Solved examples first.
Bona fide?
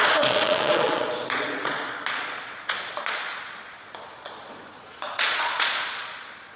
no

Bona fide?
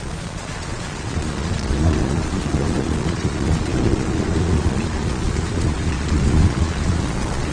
no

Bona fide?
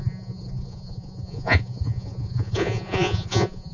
no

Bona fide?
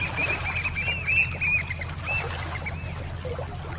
yes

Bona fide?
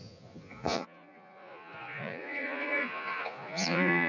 no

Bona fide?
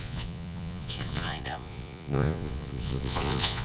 no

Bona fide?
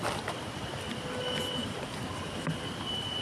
yes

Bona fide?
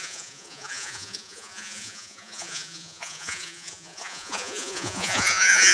no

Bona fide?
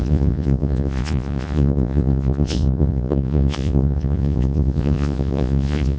no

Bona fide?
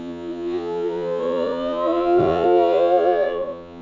no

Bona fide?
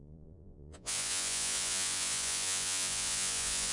no